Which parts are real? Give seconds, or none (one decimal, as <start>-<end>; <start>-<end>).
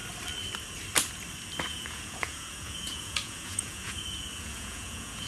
0.0-1.7